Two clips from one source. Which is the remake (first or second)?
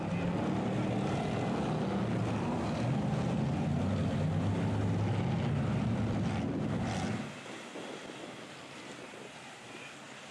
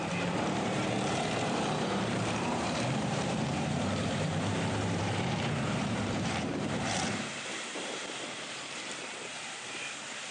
second